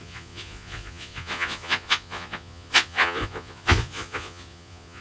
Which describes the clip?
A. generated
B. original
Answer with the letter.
A